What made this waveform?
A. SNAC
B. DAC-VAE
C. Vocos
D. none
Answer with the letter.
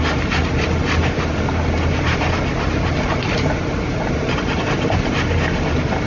D